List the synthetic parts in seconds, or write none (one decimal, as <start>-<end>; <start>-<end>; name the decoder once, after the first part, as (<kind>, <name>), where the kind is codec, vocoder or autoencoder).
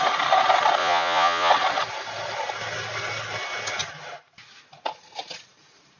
0.8-1.5 (vocoder, Vocos)